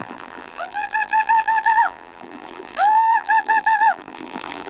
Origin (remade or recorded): remade